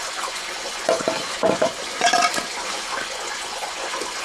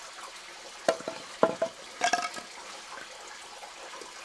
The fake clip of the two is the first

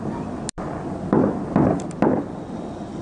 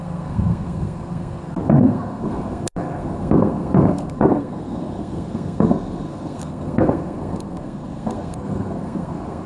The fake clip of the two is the second